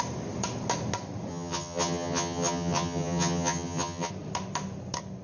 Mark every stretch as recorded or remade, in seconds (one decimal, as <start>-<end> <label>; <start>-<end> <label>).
0.0-1.3 recorded; 1.3-4.1 remade; 4.1-5.2 recorded